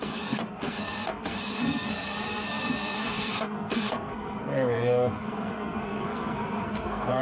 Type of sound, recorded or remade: remade